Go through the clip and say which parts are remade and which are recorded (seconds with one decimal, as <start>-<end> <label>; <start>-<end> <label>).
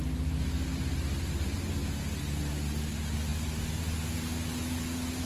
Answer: 0.0-5.3 recorded